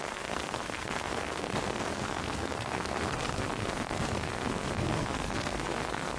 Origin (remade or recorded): remade